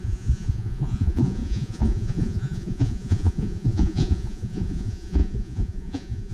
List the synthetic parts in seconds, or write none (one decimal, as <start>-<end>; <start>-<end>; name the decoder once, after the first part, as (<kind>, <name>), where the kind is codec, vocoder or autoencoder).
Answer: 0.0-6.3 (vocoder, Vocos)